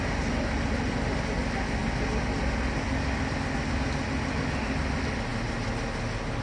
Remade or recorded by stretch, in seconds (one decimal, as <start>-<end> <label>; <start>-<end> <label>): 0.0-6.4 recorded